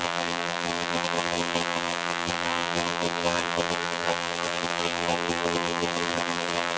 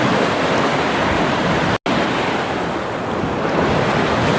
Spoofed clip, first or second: first